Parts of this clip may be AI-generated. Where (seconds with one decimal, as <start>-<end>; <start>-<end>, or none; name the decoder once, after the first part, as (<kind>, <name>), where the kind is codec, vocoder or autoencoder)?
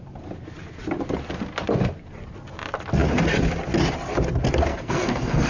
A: 4.7-5.5 (codec, SNAC)